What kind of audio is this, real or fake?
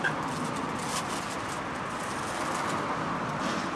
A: real